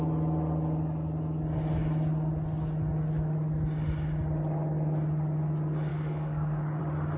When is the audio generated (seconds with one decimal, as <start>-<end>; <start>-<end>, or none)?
5.9-6.8